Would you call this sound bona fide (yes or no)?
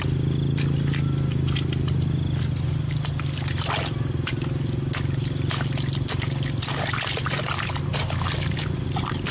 yes